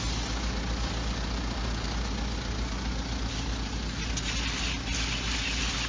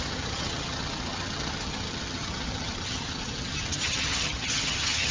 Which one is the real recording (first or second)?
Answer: first